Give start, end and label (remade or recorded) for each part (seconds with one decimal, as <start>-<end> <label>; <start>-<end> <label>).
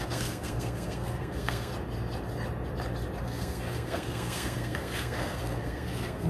0.0-1.7 remade; 1.7-3.2 recorded; 3.2-6.3 remade